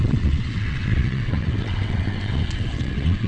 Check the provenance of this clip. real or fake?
fake